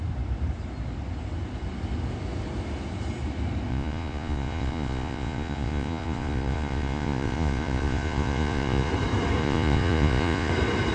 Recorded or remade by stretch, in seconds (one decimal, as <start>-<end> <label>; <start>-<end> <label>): 0.0-3.7 recorded; 3.7-8.9 remade; 8.9-9.4 recorded; 9.4-10.5 remade; 10.5-10.9 recorded